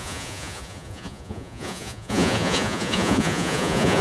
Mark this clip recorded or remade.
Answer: remade